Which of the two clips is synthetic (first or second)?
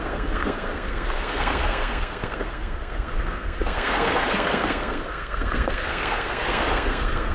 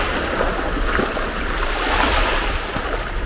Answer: first